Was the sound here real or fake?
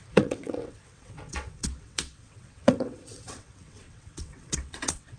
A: fake